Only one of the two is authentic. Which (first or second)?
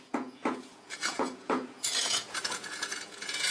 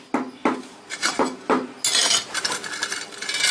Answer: second